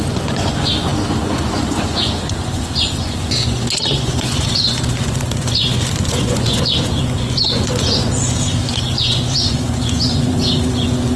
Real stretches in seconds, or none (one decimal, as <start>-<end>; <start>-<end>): none